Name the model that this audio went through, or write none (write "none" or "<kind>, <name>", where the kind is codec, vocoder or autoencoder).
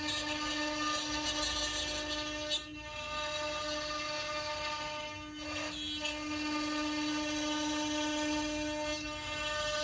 none